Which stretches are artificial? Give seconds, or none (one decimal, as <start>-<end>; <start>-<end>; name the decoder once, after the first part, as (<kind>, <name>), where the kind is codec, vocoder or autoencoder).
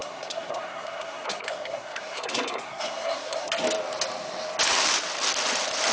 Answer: 0.0-3.5 (codec, SNAC)